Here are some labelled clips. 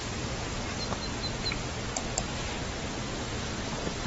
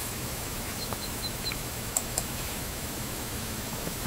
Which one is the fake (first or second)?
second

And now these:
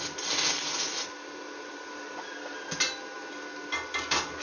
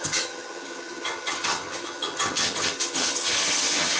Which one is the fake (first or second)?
second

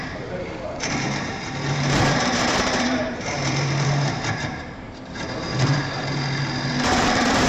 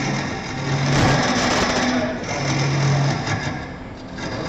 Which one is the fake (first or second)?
first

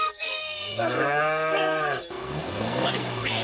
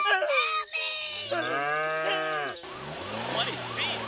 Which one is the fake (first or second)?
first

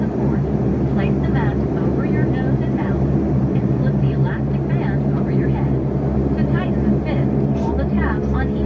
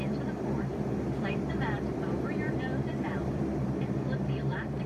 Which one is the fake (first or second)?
second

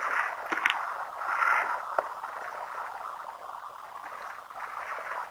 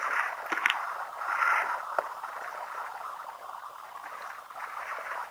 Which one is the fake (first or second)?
second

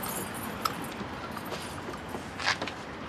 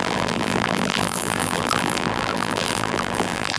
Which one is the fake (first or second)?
second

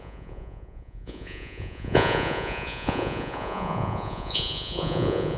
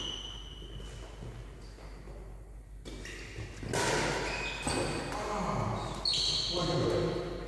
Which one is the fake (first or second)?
first